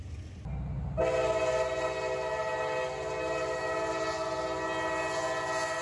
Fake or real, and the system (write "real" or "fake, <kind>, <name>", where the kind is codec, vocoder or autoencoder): real